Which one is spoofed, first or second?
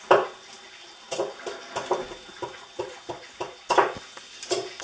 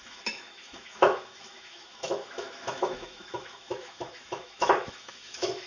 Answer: second